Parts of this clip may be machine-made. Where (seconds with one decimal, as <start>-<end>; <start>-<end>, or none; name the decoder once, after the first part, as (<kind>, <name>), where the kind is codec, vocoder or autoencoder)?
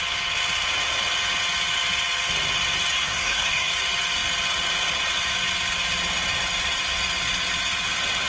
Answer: 2.9-3.7 (codec, SNAC)